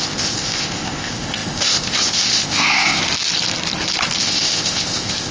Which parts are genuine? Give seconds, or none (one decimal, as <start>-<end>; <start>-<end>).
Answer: 3.0-4.2